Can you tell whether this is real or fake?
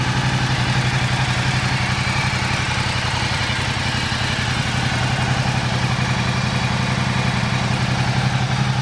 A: real